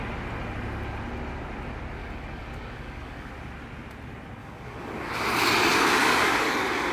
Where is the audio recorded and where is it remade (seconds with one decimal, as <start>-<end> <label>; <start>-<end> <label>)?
0.0-2.0 recorded; 2.0-3.3 remade; 3.3-4.4 recorded; 4.4-5.1 remade; 5.1-6.0 recorded; 6.0-6.9 remade